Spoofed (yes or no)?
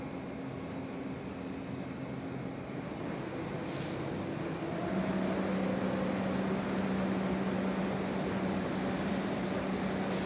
no